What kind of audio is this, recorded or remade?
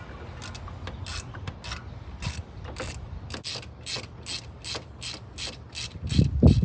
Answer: recorded